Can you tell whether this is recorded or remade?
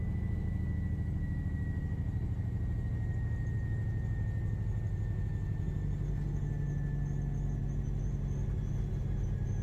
recorded